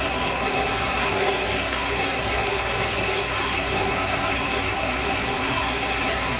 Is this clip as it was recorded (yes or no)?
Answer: no